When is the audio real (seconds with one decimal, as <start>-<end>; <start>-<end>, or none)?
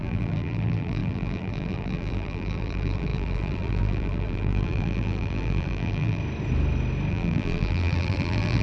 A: 6.2-7.1